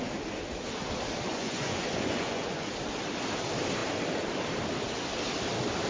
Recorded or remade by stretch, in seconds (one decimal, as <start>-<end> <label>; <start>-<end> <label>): 0.0-1.3 recorded; 1.3-2.7 remade; 2.7-5.9 recorded